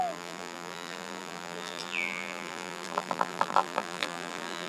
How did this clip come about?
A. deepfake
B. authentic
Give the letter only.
A